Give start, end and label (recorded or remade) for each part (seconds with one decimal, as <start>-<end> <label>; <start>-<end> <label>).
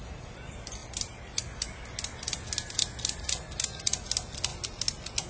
0.0-5.3 recorded